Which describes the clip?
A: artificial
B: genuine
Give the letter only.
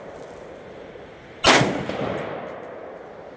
B